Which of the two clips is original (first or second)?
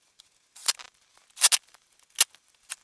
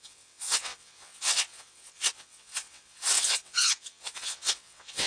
first